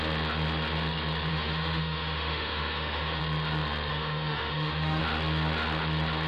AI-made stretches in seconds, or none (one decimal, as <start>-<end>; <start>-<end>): 1.3-3.2; 3.9-5.0